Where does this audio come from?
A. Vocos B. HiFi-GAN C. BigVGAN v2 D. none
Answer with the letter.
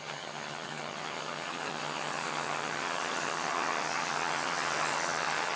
B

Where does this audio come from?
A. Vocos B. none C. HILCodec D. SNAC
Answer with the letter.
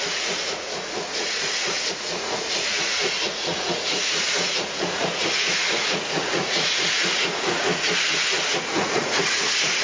A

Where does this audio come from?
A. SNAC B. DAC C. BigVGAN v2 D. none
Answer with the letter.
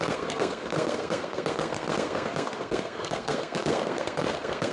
A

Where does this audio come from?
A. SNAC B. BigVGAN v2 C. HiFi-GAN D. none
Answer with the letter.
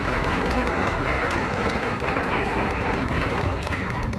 A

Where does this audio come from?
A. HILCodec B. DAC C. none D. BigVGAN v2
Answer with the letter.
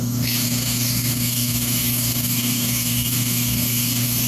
B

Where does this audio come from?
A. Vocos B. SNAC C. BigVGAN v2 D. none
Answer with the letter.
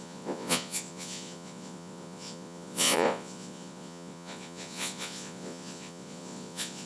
A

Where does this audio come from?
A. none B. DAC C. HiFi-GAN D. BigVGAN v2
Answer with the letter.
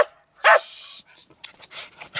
A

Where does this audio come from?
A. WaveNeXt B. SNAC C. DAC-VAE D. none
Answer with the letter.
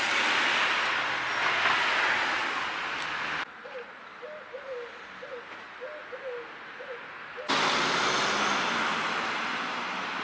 D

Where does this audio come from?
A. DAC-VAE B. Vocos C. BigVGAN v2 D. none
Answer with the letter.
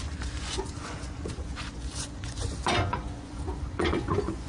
B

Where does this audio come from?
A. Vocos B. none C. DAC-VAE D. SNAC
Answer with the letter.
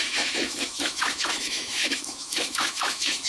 C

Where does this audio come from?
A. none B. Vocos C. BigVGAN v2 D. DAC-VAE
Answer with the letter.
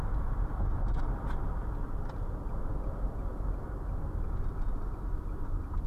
A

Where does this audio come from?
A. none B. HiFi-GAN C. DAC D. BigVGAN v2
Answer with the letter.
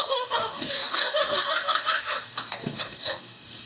C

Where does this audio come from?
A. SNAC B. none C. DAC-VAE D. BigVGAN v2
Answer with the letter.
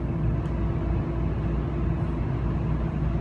B